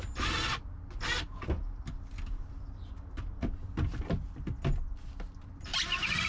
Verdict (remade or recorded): recorded